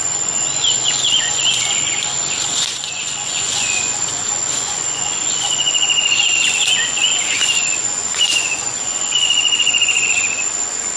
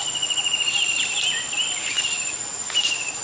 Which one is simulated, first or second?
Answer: first